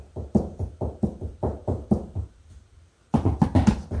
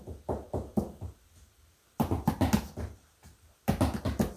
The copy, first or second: first